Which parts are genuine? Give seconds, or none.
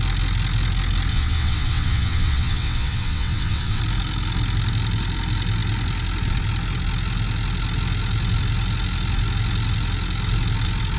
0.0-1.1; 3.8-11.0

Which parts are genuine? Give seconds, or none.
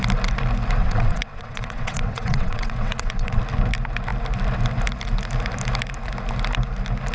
0.0-0.8; 3.4-7.1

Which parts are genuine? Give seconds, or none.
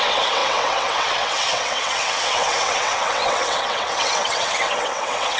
none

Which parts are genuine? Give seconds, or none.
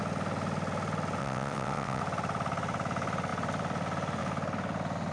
0.0-1.2; 2.0-5.1